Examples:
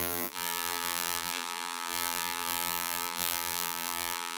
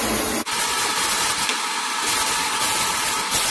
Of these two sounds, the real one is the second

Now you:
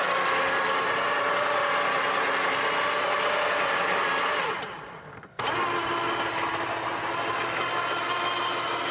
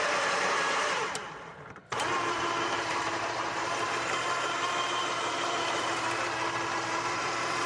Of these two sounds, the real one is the first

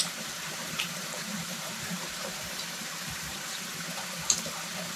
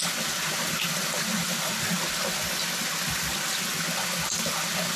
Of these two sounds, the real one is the second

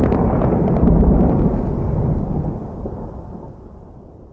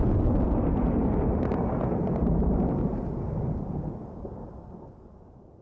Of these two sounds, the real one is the second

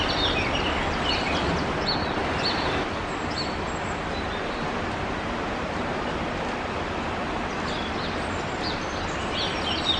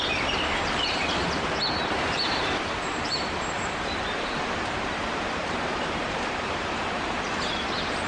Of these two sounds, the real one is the first